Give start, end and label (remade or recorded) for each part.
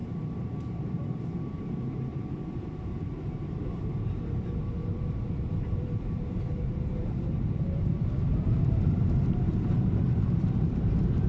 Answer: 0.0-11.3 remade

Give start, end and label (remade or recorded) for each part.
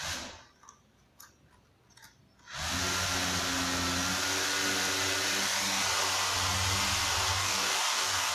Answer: 0.0-7.3 recorded; 7.3-8.3 remade